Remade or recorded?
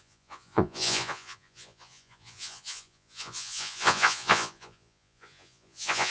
remade